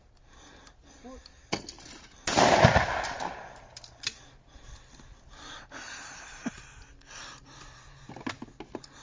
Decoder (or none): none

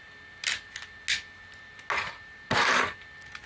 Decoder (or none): none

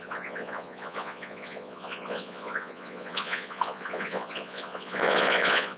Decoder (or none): vocoder, Vocos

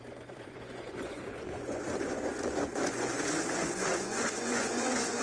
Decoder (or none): vocoder, Vocos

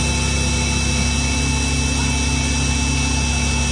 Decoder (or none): none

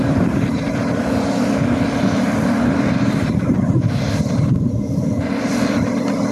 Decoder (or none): vocoder, BigVGAN v2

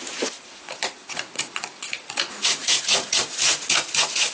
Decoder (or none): vocoder, Vocos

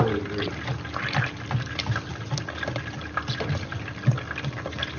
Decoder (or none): none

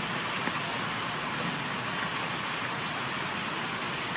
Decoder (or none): none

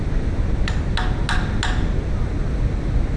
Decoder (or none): none